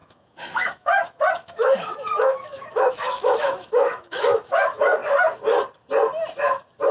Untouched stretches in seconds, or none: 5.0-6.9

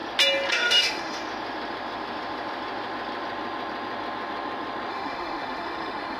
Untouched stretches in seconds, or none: 0.0-0.5; 1.2-4.9

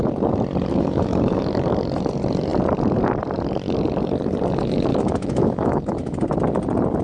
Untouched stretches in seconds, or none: 0.0-0.7; 1.4-4.9; 6.3-7.0

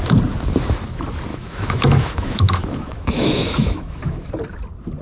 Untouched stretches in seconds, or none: 0.0-1.3; 4.3-5.0